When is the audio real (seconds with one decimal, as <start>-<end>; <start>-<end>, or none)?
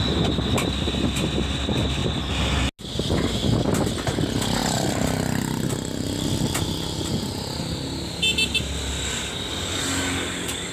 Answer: 0.0-10.7